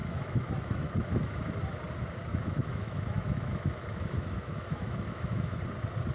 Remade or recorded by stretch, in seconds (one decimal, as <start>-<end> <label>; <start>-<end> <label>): 0.0-1.5 remade; 1.5-2.3 recorded; 2.3-5.6 remade; 5.6-6.1 recorded